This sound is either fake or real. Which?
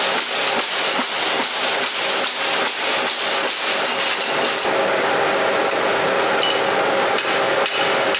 real